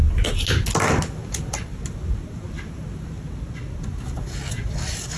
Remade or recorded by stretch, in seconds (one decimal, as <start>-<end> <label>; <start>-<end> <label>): 0.0-5.2 recorded